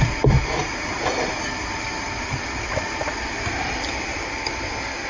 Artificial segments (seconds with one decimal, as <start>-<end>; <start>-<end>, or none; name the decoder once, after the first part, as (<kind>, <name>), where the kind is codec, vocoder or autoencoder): none